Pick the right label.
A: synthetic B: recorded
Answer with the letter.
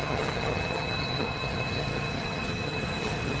A